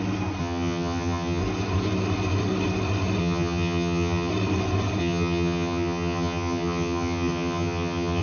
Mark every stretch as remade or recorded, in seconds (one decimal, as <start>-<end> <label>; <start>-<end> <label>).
0.0-0.4 recorded; 0.4-1.4 remade; 1.4-3.2 recorded; 3.2-4.3 remade; 4.3-5.0 recorded; 5.0-8.2 remade